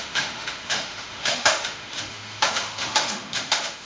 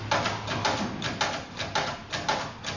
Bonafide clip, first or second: second